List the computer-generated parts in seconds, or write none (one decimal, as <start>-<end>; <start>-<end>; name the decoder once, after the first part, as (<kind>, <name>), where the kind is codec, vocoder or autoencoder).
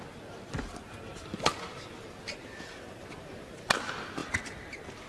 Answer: none